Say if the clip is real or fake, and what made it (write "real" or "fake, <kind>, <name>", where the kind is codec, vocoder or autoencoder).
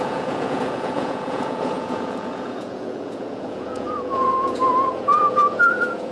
fake, vocoder, Vocos